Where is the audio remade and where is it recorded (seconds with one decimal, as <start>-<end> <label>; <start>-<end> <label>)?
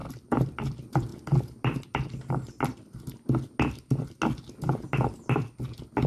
0.0-6.1 recorded